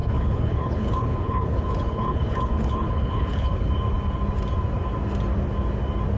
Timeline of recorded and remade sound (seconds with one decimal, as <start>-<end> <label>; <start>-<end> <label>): 0.0-3.7 remade; 3.7-6.2 recorded